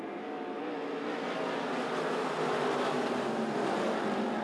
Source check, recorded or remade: recorded